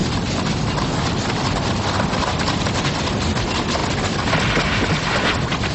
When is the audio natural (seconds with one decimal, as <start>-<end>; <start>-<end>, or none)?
0.0-5.7